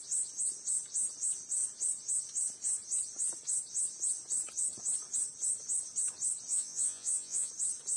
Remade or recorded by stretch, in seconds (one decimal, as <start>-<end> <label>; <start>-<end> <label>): 0.0-6.5 recorded; 6.5-7.5 remade; 7.5-8.0 recorded